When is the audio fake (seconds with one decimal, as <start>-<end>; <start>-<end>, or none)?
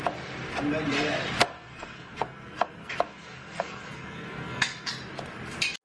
1.4-4.9